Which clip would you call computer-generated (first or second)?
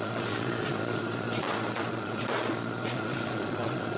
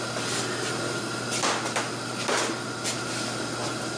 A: first